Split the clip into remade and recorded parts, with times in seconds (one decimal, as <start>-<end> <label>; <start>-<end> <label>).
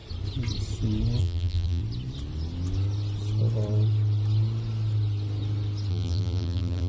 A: 0.0-1.2 recorded; 1.2-1.8 remade; 1.8-5.9 recorded; 5.9-6.9 remade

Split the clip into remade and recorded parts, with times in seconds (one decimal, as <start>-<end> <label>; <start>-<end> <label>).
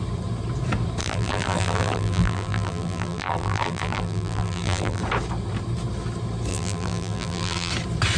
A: 0.0-1.0 recorded; 1.0-5.0 remade; 5.0-6.5 recorded; 6.5-7.7 remade; 7.7-8.2 recorded